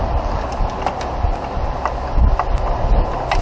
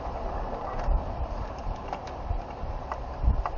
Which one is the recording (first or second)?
first